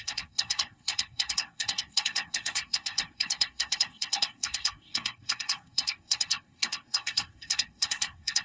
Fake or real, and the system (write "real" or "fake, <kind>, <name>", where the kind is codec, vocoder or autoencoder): fake, codec, SNAC